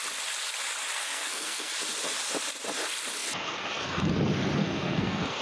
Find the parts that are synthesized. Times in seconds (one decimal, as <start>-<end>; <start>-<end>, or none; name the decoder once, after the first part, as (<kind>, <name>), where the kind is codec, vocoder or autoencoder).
0.9-1.7 (codec, SNAC); 3.2-4.1; 4.6-5.4